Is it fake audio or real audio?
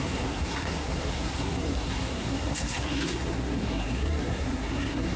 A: fake